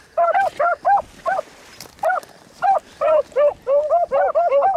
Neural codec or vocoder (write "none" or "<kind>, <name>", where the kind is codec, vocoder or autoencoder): none